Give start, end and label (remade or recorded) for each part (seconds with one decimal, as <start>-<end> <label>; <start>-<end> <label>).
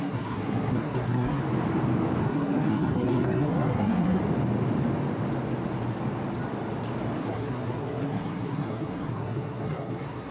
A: 0.0-1.4 remade; 1.4-2.2 recorded; 2.2-4.2 remade; 4.2-7.2 recorded; 7.2-10.3 remade